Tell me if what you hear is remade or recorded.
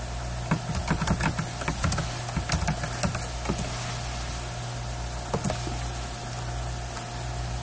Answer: recorded